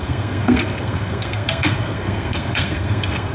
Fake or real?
fake